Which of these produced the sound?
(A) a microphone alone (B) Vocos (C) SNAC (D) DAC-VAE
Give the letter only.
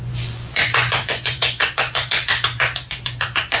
B